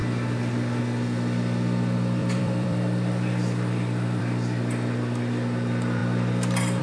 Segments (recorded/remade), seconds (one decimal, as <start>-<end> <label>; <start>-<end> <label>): 0.0-2.2 recorded; 2.2-4.2 remade; 4.2-6.8 recorded